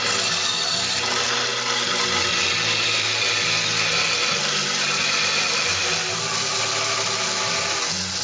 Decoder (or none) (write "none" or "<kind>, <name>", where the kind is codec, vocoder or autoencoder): none